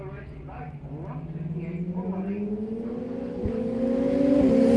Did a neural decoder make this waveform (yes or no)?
no